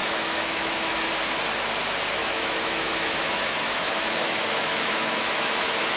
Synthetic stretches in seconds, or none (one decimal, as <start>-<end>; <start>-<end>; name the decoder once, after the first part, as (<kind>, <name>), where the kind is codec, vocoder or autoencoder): 0.0-1.1 (autoencoder, DAC-VAE); 2.2-6.0